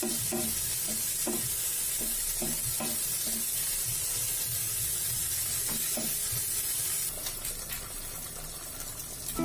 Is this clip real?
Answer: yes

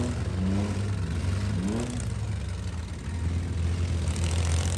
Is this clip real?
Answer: yes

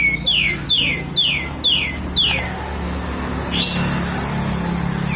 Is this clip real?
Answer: yes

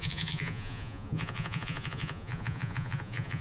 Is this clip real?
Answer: no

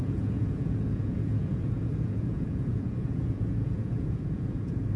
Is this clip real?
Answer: no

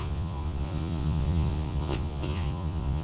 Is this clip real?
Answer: no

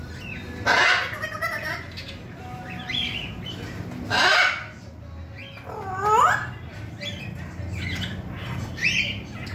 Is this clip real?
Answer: yes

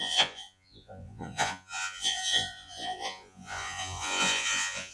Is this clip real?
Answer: no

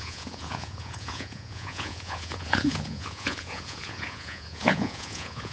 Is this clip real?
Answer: no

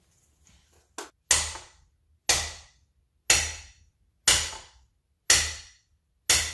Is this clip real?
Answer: yes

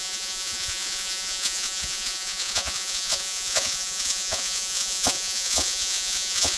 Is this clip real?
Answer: no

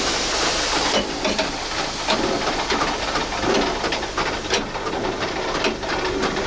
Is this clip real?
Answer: yes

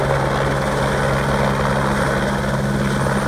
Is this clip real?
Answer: yes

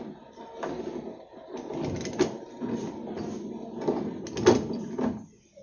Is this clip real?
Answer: yes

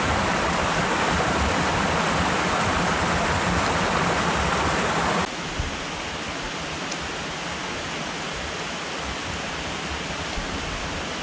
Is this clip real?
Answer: yes